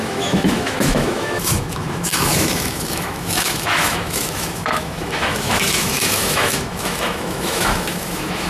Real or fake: fake